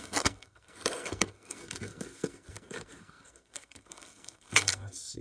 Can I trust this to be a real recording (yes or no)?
no